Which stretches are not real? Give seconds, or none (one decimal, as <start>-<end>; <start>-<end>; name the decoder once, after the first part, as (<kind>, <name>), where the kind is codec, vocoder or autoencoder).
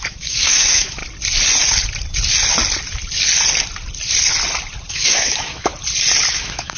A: 0.0-1.0 (autoencoder, DAC-VAE); 4.9-5.7; 6.3-6.8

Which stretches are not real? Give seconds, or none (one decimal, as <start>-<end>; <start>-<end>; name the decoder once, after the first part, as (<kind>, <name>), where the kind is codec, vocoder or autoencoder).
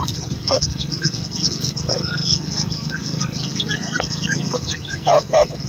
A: 0.0-5.7 (codec, SNAC)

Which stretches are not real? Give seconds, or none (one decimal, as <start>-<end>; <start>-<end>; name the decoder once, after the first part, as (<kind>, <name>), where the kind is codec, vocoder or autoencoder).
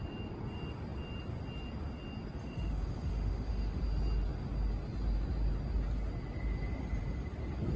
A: 2.4-3.8 (autoencoder, DAC-VAE)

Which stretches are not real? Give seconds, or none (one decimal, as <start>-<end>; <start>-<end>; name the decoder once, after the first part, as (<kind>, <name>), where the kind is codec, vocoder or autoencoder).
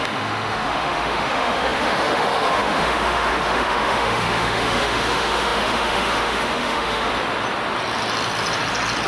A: 0.0-7.1 (autoencoder, DAC-VAE)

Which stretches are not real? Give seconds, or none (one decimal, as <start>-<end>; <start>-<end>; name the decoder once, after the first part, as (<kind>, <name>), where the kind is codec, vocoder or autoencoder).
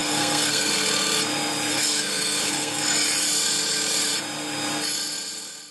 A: 0.0-0.7 (codec, SNAC); 1.7-2.8